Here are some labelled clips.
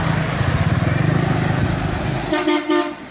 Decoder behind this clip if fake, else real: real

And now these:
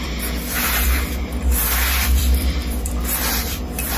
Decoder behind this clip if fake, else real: fake, vocoder, BigVGAN v2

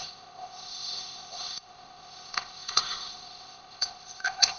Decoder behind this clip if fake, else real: fake, codec, ZipCodec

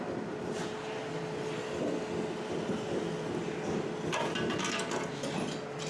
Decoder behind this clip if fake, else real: real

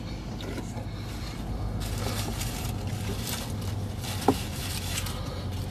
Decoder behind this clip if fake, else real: real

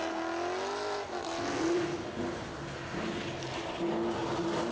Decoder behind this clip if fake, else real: real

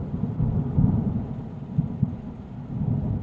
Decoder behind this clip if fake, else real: real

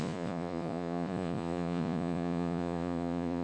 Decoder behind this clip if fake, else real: fake, vocoder, Vocos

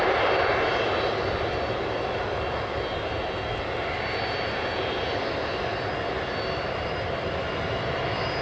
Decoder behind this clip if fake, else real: real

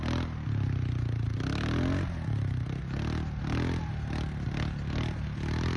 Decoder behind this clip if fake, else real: real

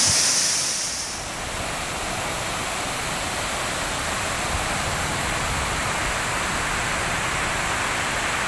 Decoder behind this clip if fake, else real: real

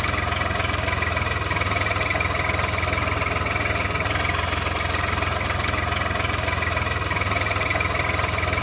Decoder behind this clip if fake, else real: real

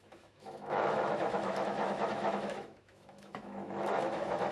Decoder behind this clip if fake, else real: fake, autoencoder, DAC-VAE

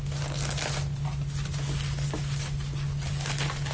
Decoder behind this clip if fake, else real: real